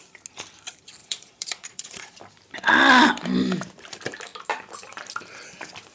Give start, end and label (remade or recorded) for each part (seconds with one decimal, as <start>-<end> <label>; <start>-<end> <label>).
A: 0.0-1.0 recorded; 1.0-2.2 remade; 2.2-5.9 recorded